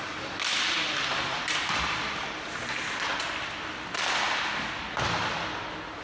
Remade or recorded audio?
recorded